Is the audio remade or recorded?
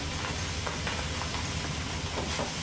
recorded